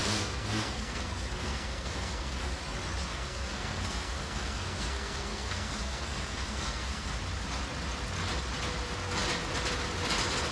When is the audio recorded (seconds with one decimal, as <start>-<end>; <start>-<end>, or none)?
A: 2.6-3.1; 7.1-10.5